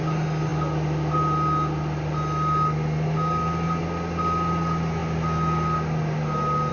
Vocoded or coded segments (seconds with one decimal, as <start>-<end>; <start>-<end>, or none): none